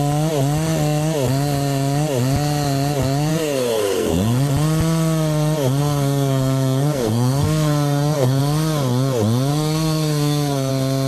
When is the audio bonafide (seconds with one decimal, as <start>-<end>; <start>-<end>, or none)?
0.0-3.3; 4.5-5.8; 8.4-9.5; 10.7-11.1